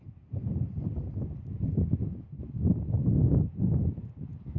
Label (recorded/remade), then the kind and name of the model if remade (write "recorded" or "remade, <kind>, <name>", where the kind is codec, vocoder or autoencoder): recorded